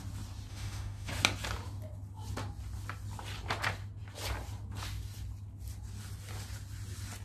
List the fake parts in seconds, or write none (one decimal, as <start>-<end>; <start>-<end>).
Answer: 0.5-1.1